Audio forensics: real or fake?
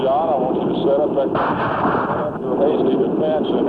real